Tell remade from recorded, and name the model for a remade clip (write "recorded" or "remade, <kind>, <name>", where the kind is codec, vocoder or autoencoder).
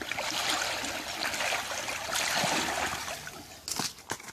recorded